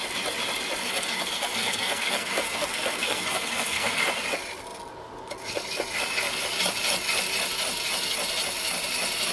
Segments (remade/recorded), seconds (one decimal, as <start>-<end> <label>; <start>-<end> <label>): 0.0-0.8 recorded; 0.8-4.0 remade; 4.0-9.3 recorded